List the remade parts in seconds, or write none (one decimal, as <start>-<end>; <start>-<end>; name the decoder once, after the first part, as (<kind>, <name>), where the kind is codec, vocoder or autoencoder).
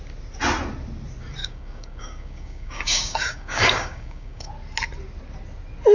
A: 1.4-4.5 (codec, DAC)